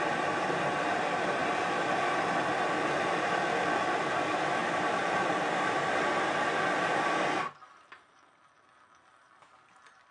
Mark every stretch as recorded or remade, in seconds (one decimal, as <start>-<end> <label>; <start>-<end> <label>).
0.0-10.1 recorded